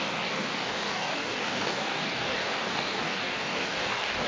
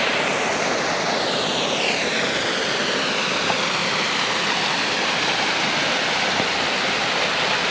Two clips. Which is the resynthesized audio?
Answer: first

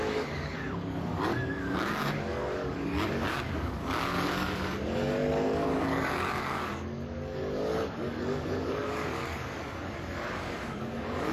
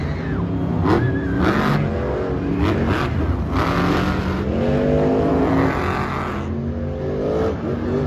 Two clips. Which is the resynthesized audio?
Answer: first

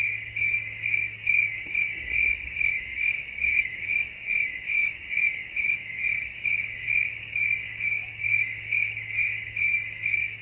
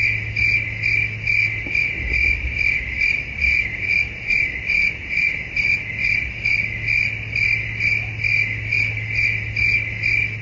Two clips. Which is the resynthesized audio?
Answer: first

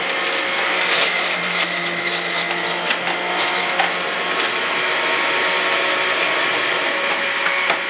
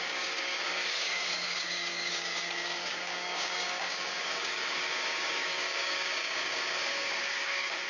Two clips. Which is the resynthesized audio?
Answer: second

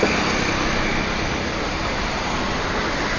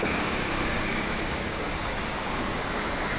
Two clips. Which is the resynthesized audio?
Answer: second